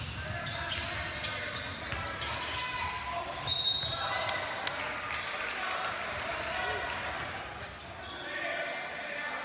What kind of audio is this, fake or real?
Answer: real